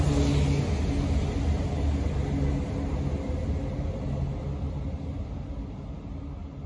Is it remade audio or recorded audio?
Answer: recorded